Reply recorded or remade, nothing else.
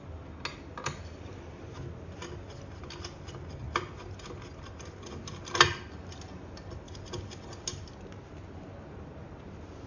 recorded